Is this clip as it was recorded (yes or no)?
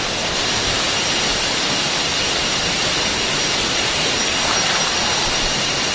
yes